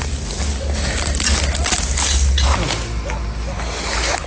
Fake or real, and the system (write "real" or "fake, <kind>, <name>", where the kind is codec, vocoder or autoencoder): real